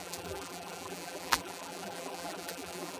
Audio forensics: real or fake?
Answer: fake